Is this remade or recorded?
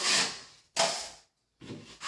recorded